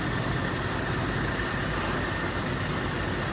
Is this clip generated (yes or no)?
no